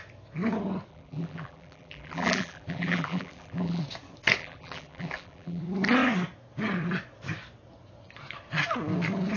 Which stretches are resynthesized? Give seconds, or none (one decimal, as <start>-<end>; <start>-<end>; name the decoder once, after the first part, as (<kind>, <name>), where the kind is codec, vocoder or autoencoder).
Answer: 0.9-3.8 (vocoder, BigVGAN v2); 4.4-5.6